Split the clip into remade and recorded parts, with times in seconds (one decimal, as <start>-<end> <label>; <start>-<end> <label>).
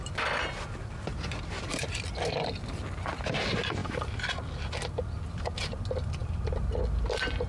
0.0-7.5 recorded